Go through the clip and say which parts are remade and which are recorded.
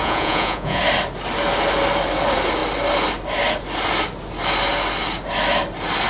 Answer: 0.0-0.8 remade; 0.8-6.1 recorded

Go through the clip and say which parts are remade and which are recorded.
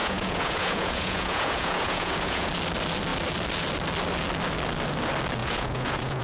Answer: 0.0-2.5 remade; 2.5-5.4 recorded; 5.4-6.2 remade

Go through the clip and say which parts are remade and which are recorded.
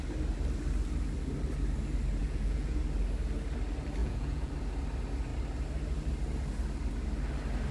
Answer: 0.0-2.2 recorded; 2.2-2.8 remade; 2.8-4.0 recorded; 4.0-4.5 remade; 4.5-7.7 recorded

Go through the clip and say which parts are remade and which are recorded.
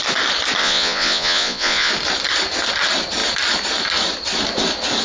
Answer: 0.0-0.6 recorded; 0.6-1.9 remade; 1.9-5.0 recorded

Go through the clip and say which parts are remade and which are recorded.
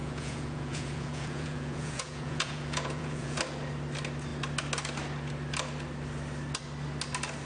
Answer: 0.0-3.4 remade; 3.4-7.5 recorded